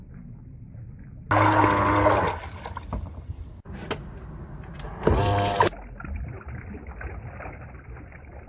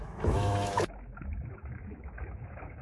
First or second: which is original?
first